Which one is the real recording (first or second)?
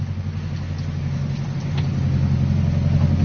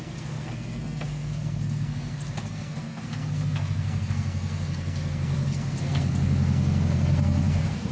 first